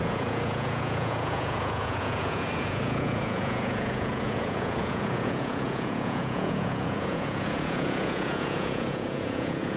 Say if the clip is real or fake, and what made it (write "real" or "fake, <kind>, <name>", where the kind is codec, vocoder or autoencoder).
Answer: fake, vocoder, Vocos